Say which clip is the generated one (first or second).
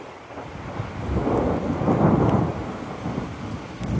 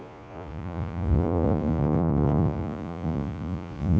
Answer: second